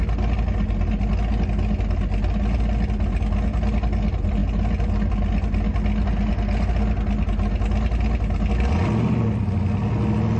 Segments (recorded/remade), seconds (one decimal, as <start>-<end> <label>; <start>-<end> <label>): 0.0-10.4 recorded